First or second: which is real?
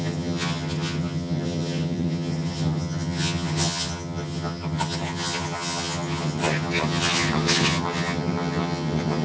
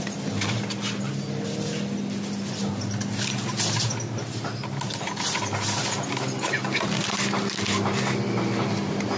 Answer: second